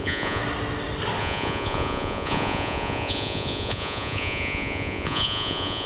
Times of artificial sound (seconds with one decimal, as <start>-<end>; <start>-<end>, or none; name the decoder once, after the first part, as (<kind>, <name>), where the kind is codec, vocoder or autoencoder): 0.0-0.4 (vocoder, Vocos); 1.2-5.9